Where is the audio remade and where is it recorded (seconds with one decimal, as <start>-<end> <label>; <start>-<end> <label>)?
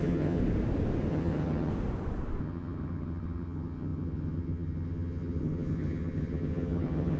0.0-0.4 remade; 0.4-1.1 recorded; 1.1-1.7 remade; 1.7-2.4 recorded; 2.4-7.2 remade